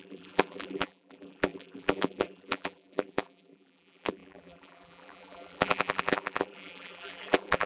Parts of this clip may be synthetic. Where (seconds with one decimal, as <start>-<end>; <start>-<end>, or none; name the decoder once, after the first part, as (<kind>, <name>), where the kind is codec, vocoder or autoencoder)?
0.0-7.7 (vocoder, BigVGAN v2)